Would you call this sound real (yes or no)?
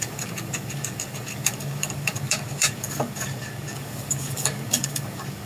no